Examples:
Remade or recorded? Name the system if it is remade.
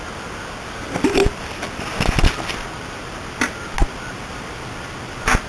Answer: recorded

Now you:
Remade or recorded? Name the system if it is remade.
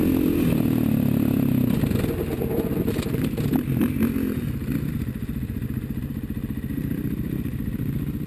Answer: recorded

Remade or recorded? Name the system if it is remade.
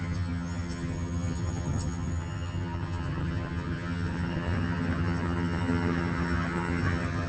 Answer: remade, vocoder, HiFi-GAN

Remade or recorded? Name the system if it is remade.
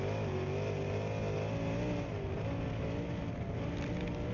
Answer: recorded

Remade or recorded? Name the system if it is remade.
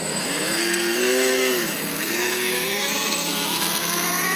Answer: remade, codec, SNAC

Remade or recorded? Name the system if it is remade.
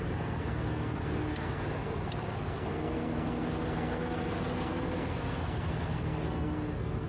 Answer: remade, codec, SNAC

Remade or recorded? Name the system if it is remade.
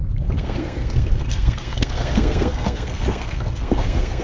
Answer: remade, codec, SNAC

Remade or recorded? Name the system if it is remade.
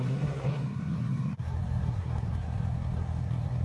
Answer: remade, codec, SNAC